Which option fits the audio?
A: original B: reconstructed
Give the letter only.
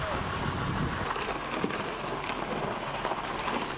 A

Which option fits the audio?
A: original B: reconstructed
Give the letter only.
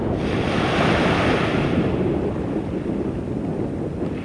A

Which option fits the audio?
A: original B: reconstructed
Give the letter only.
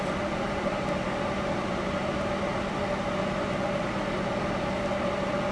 A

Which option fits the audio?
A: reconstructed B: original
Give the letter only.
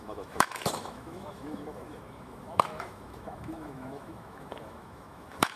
A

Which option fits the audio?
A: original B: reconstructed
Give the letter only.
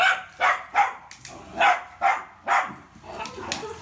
A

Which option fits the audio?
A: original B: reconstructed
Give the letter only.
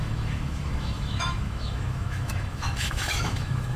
B